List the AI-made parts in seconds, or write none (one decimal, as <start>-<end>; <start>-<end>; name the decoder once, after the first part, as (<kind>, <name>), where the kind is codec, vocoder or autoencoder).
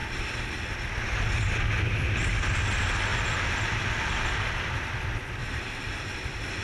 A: 2.4-3.1 (vocoder, BigVGAN v2); 3.8-5.4; 5.9-6.6